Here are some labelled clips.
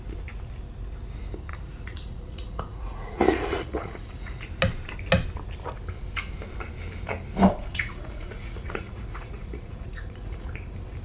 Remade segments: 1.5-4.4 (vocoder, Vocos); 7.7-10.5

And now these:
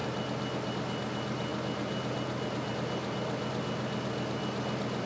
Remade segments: none

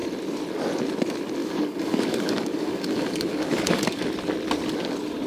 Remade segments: 1.4-4.0 (codec, DAC)

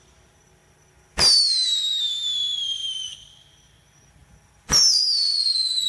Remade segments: none

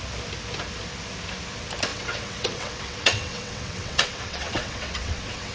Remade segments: 1.9-5.5 (vocoder, WaveNeXt)